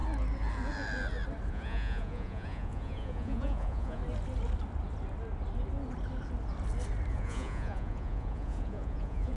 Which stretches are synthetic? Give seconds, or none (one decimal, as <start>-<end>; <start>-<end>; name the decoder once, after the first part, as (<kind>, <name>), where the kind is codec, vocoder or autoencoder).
1.5-4.0 (vocoder, Vocos); 7.1-9.4